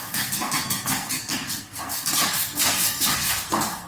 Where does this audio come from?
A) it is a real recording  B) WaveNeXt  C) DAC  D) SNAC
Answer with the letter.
D